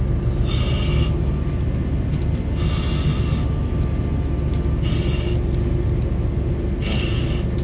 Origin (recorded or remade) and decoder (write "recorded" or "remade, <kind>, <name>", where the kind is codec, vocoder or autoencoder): recorded